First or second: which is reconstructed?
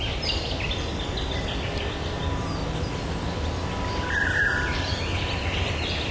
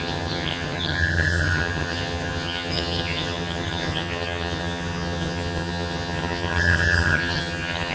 second